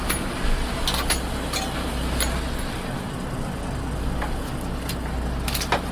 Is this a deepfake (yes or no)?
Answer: no